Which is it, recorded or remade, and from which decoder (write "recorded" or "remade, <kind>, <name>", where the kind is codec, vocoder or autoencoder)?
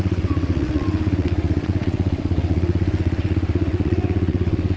remade, vocoder, WaveNeXt